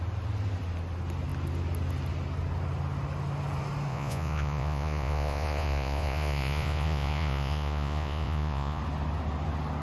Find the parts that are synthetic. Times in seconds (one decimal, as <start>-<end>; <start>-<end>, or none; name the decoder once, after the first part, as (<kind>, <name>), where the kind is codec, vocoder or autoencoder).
3.9-8.8 (vocoder, Vocos)